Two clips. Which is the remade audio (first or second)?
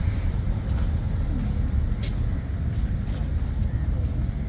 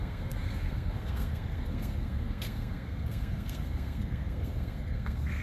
second